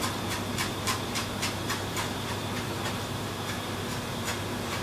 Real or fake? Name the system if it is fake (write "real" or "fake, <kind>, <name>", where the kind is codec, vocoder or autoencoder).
fake, vocoder, BigVGAN v2